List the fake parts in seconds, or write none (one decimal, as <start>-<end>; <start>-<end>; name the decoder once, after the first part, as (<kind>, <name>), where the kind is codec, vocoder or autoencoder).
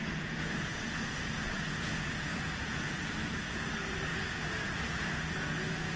0.0-3.6 (vocoder, Vocos); 4.1-6.0